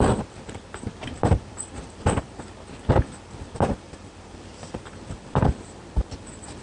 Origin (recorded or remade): remade